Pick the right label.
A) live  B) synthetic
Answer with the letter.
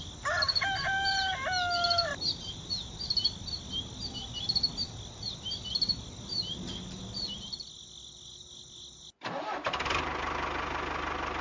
A